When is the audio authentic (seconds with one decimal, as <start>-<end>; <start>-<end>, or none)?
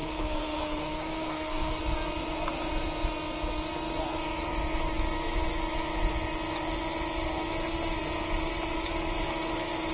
1.8-9.9